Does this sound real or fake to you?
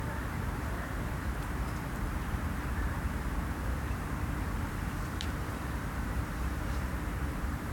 fake